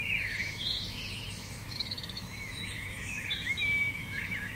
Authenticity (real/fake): fake